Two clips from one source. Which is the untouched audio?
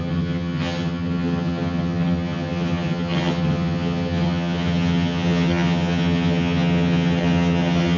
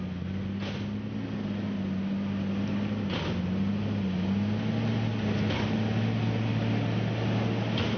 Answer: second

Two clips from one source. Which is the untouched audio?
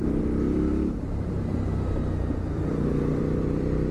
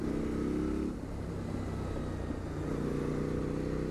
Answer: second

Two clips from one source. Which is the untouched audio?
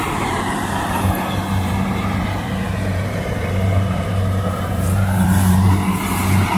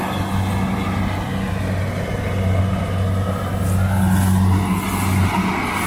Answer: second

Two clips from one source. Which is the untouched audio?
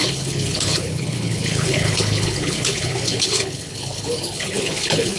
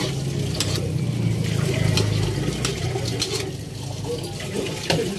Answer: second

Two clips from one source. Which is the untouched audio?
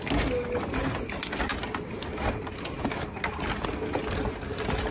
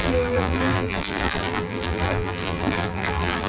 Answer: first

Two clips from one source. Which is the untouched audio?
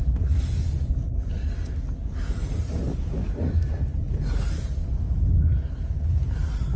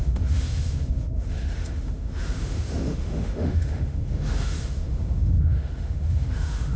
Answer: first